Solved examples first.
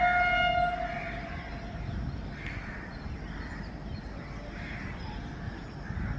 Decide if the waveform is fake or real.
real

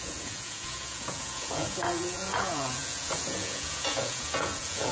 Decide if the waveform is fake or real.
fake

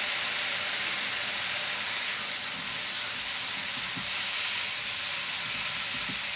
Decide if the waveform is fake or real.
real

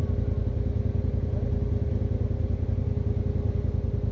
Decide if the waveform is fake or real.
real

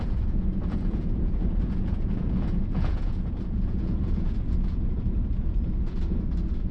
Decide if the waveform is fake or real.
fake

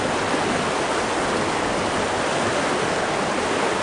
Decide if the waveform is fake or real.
real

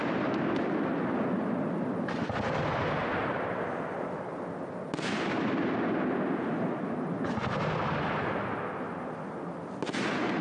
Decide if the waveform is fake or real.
real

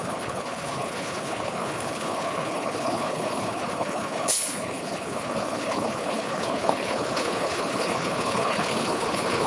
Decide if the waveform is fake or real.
fake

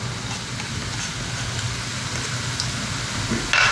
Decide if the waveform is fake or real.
real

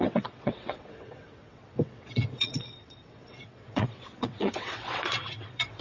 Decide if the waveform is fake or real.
fake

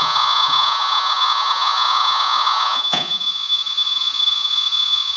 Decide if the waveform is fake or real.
fake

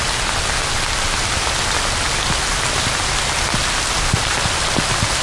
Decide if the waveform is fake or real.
real